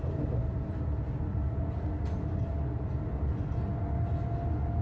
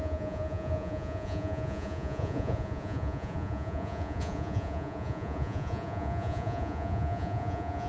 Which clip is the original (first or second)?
first